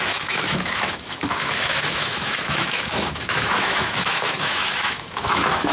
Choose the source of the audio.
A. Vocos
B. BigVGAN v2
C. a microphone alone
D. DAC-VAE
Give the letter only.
D